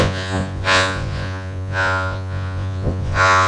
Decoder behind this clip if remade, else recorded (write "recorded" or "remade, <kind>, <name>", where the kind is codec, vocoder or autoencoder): remade, vocoder, Vocos